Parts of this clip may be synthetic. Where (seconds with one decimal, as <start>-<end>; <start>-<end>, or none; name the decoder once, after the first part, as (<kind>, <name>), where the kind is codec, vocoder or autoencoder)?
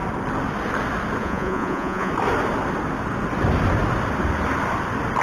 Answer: 1.2-2.1 (vocoder, Vocos)